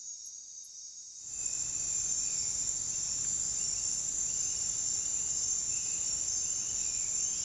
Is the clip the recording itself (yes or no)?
yes